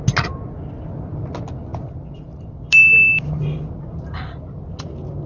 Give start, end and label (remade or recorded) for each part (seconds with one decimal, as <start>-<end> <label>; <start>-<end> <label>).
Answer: 0.0-5.3 recorded